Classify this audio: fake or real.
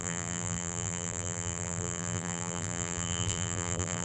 fake